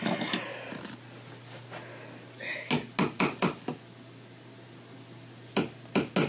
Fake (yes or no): no